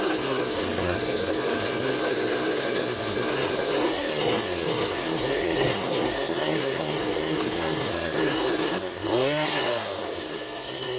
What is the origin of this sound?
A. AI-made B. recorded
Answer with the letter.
A